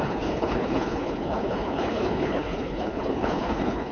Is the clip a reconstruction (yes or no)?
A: yes